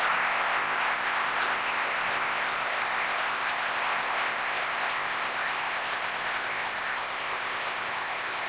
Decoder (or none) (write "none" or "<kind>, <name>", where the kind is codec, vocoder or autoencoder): codec, ZipCodec